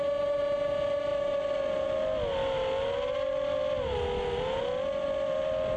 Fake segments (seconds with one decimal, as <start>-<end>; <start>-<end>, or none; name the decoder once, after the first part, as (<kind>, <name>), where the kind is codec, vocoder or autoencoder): none